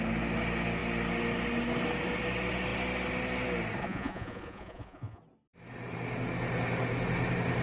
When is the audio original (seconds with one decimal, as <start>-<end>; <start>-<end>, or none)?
0.0-3.8; 5.2-7.6